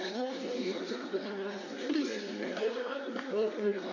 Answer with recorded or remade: remade